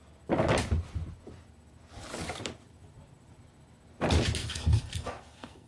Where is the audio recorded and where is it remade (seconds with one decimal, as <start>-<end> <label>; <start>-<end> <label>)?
0.0-4.4 recorded; 4.4-5.7 remade